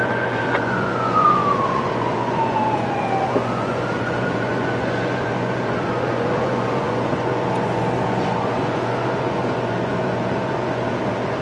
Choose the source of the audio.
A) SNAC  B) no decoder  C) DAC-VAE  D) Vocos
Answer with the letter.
D